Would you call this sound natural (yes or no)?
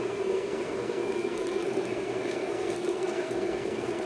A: no